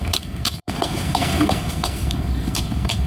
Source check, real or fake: fake